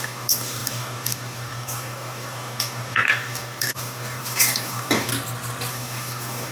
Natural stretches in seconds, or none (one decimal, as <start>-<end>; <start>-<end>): 5.1-5.7